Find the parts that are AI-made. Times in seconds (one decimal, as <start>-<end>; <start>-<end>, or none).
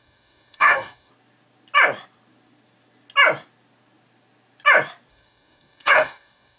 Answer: 0.0-1.1; 5.1-6.6